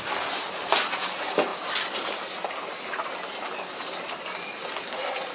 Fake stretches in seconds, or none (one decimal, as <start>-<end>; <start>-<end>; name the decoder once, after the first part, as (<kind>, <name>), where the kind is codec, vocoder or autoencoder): none